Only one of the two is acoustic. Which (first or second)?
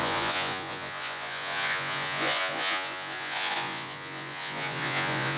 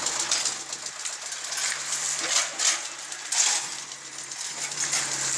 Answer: second